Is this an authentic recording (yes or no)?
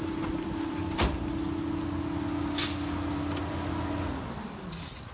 yes